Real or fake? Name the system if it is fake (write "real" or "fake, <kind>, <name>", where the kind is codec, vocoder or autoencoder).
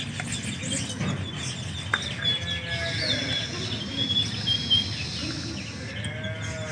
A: real